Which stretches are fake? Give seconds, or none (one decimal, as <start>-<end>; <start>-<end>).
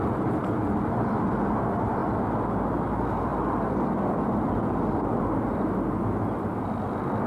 none